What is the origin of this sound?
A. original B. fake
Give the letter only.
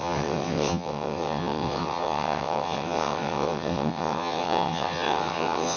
B